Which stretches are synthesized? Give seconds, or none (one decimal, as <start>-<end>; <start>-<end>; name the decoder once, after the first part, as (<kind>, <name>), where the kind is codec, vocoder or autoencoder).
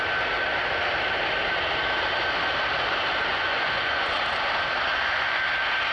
3.3-4.2 (vocoder, Vocos); 4.9-5.4